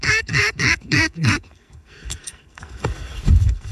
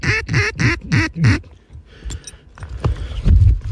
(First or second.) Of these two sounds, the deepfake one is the first